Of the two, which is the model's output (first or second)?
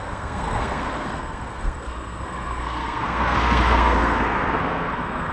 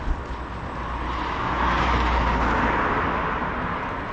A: first